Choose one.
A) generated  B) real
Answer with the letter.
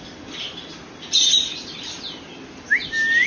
B